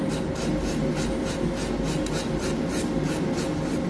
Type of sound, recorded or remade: recorded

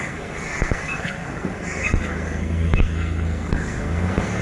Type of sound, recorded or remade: remade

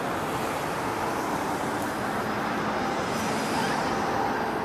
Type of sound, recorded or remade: recorded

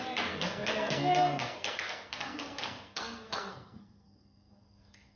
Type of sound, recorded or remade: remade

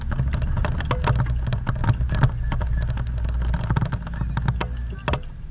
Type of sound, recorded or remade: recorded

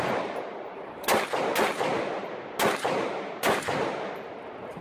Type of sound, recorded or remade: recorded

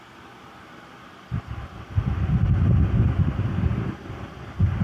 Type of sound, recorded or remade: recorded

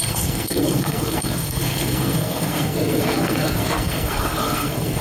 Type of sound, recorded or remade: remade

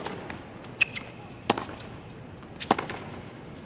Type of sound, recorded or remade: recorded